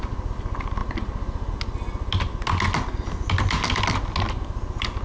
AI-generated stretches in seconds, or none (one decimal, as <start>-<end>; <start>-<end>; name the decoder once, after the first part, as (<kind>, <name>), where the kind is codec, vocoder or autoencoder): none